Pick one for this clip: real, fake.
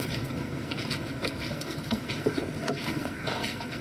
fake